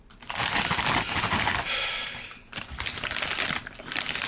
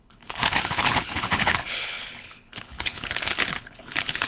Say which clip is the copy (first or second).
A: second